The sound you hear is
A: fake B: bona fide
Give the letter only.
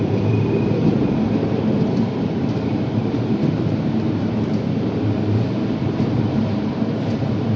A